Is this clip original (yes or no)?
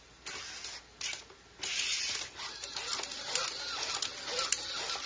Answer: yes